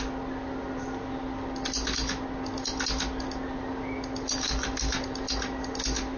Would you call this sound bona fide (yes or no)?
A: yes